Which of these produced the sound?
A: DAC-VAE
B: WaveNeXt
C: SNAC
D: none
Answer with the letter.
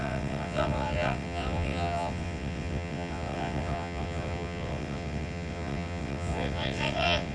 B